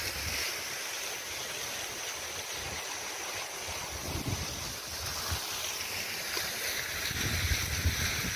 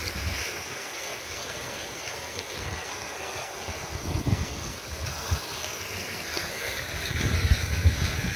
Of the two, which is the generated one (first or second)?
second